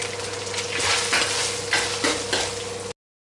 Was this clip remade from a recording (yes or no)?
no